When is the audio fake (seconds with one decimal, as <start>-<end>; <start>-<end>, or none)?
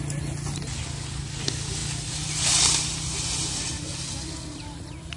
none